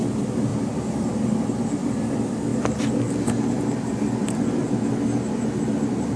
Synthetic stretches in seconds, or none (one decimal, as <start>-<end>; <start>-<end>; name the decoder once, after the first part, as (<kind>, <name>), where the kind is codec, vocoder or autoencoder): none